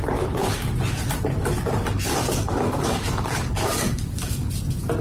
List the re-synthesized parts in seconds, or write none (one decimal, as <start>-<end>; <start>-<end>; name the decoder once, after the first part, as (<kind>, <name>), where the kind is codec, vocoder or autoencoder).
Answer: 2.2-4.5 (codec, DAC)